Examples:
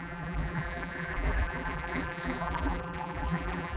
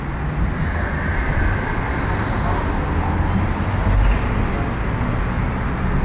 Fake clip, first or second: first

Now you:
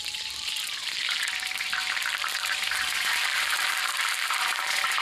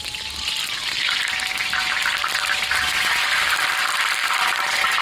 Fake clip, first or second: first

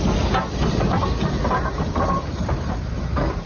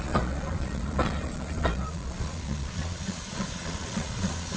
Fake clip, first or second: second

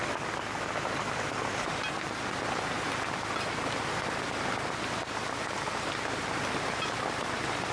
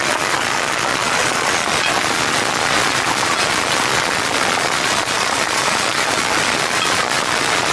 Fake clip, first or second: second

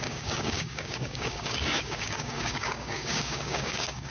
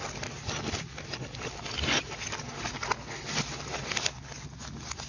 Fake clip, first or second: first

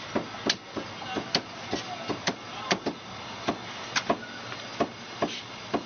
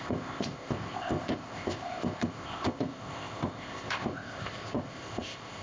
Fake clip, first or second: second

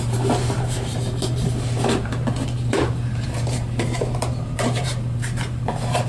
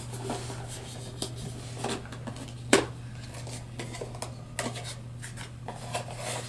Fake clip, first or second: first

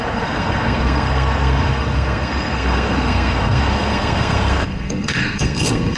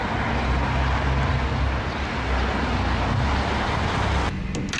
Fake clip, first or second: first